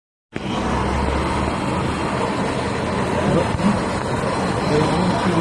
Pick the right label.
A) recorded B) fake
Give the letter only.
A